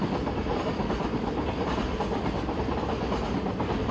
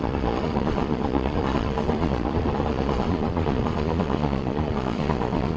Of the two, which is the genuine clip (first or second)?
first